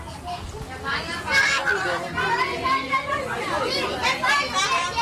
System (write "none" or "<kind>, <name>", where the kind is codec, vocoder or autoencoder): none